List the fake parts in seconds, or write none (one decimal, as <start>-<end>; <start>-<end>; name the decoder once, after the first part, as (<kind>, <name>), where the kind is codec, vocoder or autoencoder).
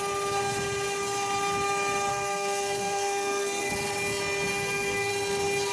2.1-3.7 (codec, SNAC); 4.5-5.1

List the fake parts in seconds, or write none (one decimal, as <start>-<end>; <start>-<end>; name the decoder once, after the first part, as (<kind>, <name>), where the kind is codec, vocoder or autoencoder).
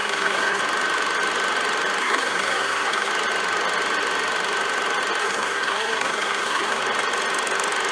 0.0-0.6 (codec, SNAC); 2.0-3.1; 5.2-6.8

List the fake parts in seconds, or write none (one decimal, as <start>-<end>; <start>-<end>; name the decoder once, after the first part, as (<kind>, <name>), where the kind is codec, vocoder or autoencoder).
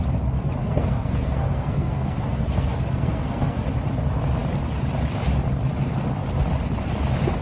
0.6-3.6 (codec, SNAC)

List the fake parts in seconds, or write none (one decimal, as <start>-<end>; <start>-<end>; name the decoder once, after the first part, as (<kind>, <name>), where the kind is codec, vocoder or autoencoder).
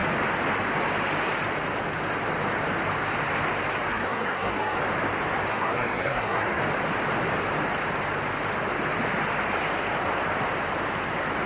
3.9-4.8 (codec, SNAC); 5.5-6.6